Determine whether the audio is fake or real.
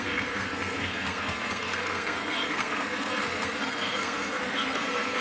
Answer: fake